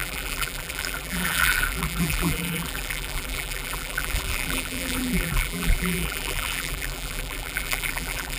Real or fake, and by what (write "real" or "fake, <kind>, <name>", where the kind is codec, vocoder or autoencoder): fake, vocoder, BigVGAN v2